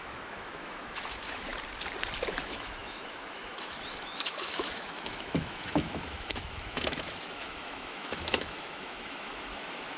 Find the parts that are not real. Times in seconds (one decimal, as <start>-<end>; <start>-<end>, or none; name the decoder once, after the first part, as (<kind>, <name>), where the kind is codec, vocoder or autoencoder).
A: 0.0-1.5 (autoencoder, DAC-VAE); 2.3-10.0